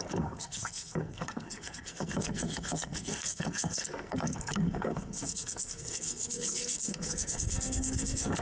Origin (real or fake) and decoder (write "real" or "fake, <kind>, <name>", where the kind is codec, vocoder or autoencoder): fake, codec, SNAC